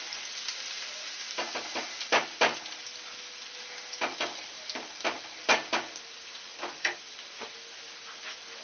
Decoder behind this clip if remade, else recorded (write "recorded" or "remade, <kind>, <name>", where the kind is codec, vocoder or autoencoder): recorded